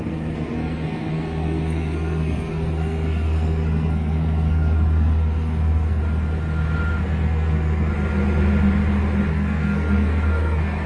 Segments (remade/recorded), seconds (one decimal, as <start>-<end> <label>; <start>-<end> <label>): 0.0-6.0 remade; 6.0-7.0 recorded; 7.0-7.9 remade; 7.9-9.3 recorded; 9.3-10.9 remade